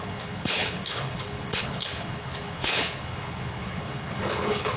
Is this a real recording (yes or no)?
no